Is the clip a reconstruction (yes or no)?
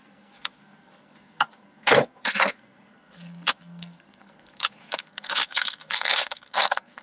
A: yes